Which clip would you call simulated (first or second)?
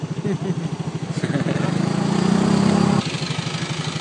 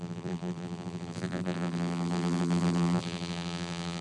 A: second